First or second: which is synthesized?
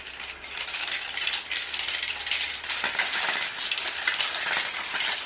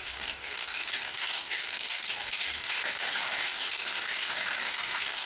second